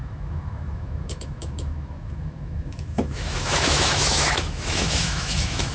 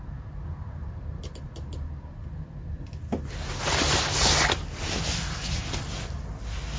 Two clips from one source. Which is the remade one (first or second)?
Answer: first